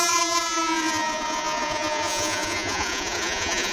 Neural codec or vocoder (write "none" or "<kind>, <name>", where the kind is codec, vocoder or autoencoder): vocoder, Vocos